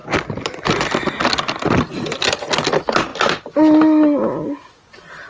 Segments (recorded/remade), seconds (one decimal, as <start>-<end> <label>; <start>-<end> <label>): 0.0-5.3 recorded